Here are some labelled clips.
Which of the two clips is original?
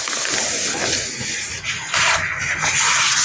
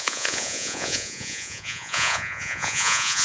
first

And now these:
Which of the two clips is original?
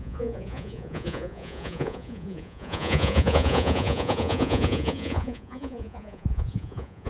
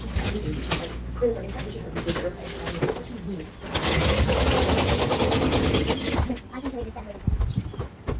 second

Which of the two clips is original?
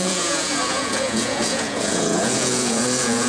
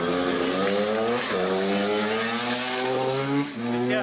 second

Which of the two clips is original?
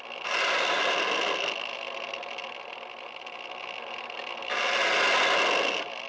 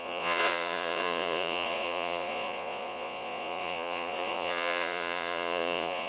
first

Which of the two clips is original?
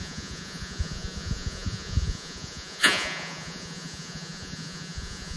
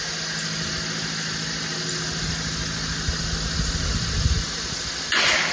second